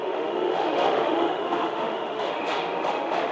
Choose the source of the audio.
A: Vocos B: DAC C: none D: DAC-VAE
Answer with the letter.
D